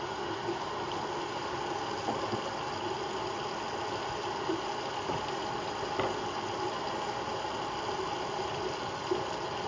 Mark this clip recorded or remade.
recorded